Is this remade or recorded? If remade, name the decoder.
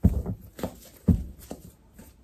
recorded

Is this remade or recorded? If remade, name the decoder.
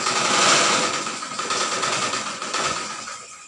remade, vocoder, Vocos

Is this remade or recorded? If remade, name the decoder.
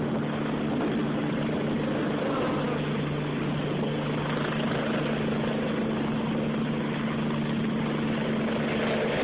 recorded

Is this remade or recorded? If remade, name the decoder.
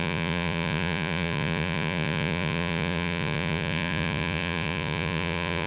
remade, vocoder, Vocos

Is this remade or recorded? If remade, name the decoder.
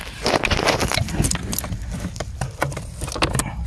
recorded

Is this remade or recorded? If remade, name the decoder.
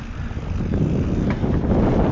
recorded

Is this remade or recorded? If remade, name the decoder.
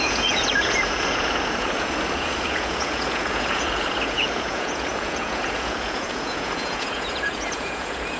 remade, vocoder, Vocos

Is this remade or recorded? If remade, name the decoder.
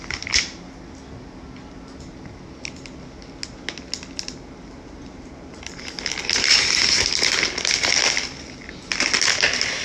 recorded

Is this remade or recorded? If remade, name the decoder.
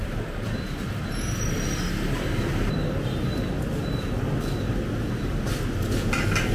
recorded